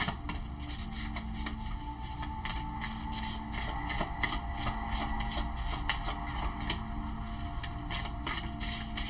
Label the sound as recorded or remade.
recorded